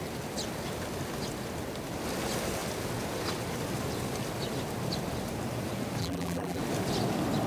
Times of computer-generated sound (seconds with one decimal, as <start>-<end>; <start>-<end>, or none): 6.0-6.6